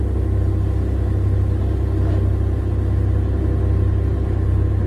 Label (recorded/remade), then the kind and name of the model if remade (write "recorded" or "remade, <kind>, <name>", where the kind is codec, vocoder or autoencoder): recorded